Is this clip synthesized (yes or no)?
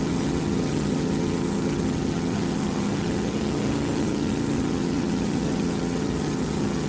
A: yes